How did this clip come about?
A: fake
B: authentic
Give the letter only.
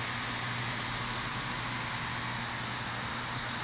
B